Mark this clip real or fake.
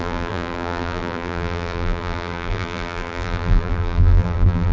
fake